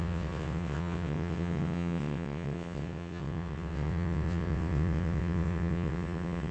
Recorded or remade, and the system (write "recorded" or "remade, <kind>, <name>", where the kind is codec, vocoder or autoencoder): remade, vocoder, WaveNeXt